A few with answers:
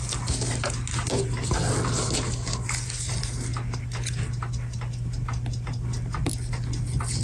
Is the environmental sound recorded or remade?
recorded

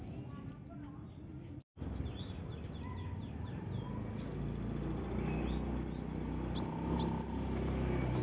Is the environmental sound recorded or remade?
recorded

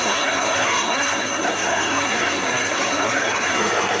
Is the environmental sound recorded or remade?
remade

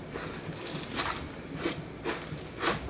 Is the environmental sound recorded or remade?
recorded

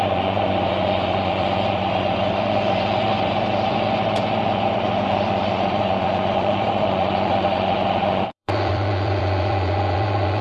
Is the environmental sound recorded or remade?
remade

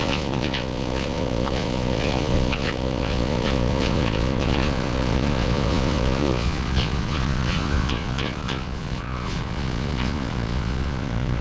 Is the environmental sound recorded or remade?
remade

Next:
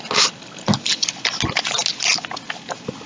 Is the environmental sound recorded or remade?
recorded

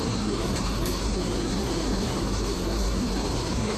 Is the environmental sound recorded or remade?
remade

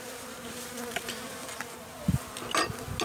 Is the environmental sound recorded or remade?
recorded